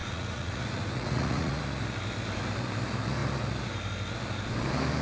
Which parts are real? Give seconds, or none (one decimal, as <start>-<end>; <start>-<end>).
1.6-5.0